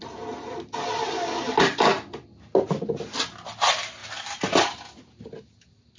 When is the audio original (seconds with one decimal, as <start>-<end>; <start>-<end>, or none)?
0.0-6.0